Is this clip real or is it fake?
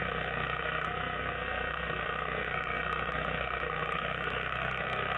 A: fake